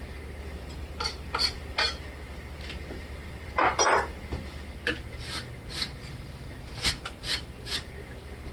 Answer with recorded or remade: remade